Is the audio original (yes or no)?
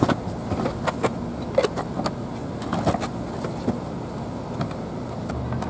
yes